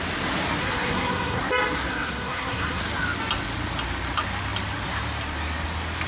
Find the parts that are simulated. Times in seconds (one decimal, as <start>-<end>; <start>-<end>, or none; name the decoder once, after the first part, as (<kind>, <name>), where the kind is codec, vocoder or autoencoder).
0.6-1.4 (codec, SNAC); 1.9-2.8